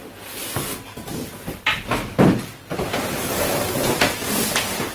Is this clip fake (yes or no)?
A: no